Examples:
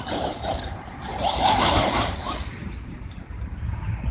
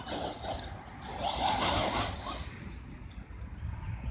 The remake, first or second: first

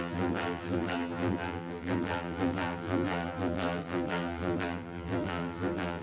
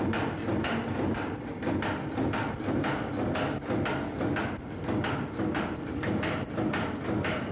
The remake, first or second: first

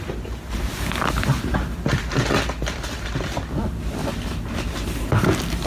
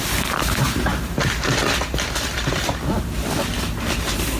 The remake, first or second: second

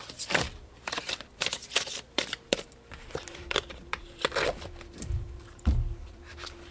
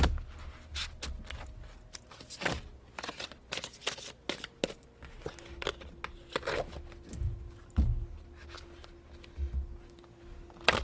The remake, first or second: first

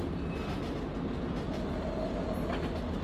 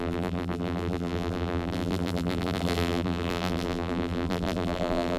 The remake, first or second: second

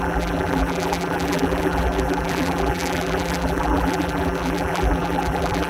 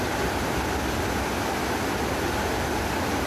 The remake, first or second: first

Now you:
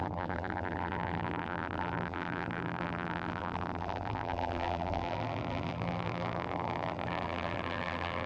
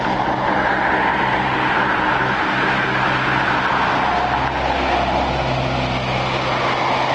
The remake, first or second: first